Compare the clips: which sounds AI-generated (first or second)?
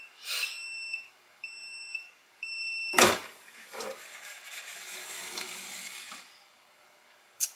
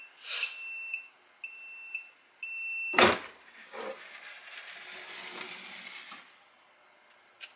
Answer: first